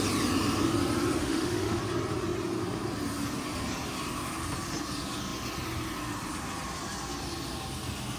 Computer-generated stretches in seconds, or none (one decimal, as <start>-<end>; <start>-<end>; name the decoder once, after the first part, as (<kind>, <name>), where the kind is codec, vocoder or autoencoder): 1.2-1.8 (autoencoder, DAC-VAE)